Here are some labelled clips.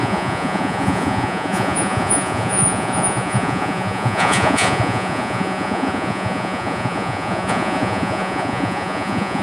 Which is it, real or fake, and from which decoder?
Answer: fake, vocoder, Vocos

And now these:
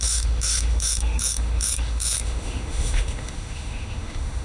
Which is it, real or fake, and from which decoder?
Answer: fake, autoencoder, DAC-VAE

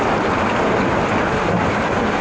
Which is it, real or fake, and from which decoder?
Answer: real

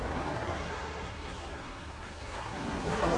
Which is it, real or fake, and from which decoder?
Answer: fake, codec, SNAC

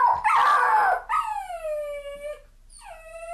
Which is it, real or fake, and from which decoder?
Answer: real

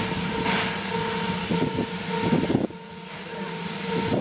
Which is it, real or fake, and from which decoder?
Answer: real